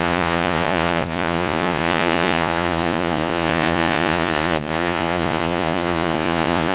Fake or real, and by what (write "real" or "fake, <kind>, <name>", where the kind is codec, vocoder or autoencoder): fake, vocoder, Vocos